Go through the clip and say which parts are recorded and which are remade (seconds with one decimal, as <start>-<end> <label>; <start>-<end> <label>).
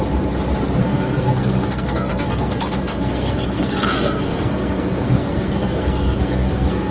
0.0-0.8 recorded; 0.8-6.9 remade